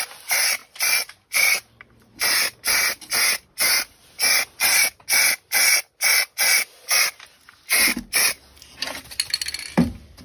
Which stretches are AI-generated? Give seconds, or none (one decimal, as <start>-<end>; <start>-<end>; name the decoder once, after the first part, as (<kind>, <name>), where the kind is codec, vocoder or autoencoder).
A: none